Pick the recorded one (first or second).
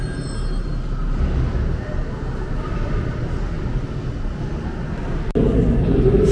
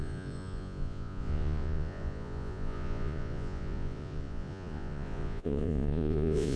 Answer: first